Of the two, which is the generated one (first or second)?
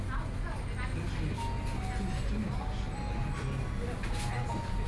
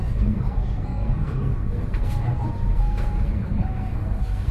second